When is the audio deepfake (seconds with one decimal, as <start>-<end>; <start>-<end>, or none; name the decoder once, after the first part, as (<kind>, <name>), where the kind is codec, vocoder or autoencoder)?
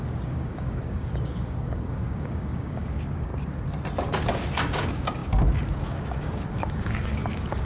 0.0-3.3 (codec, DAC); 4.7-7.6